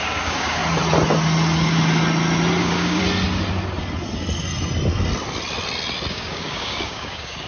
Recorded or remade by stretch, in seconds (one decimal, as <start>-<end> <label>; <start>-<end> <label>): 0.0-0.6 remade; 0.6-2.6 recorded; 2.6-3.0 remade; 3.0-6.1 recorded; 6.1-7.5 remade